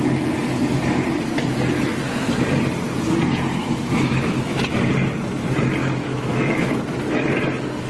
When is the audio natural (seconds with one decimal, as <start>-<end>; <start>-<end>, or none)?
0.0-3.6; 4.6-5.8; 6.7-7.9